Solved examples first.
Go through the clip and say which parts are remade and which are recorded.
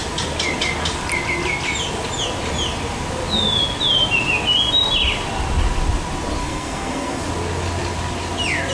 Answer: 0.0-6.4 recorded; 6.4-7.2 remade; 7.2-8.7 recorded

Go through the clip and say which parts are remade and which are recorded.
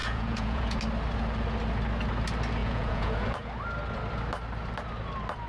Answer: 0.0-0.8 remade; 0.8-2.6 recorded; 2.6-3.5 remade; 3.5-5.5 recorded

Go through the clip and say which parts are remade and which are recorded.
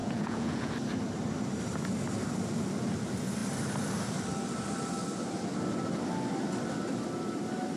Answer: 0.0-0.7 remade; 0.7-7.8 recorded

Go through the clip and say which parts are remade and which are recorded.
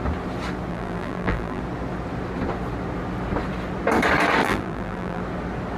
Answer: 0.0-0.7 recorded; 0.7-1.6 remade; 1.6-4.4 recorded; 4.4-5.2 remade; 5.2-5.8 recorded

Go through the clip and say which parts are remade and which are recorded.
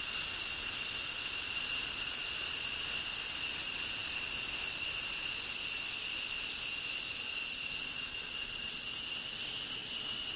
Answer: 0.0-10.4 recorded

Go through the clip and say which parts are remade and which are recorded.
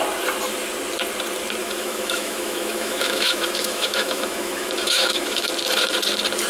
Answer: 0.0-1.6 recorded; 1.6-5.5 remade; 5.5-6.5 recorded